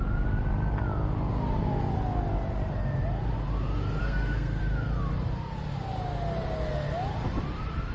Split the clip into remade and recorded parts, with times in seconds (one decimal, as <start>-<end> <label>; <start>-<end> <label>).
0.0-4.0 recorded; 4.0-4.6 remade; 4.6-7.9 recorded